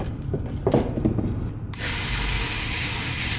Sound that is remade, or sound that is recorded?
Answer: recorded